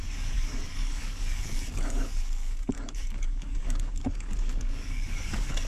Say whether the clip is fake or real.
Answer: fake